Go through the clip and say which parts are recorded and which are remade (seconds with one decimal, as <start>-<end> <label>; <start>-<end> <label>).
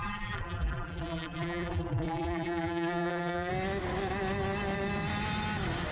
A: 0.0-3.5 remade; 3.5-5.9 recorded